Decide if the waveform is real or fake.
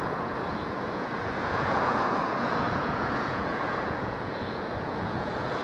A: fake